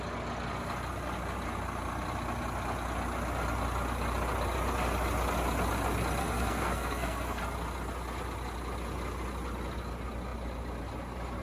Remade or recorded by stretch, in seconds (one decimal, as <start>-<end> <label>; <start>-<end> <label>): 0.0-6.2 recorded; 6.2-7.4 remade; 7.4-11.4 recorded